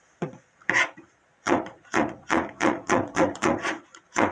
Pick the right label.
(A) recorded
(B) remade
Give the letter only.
B